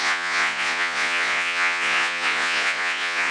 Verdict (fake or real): fake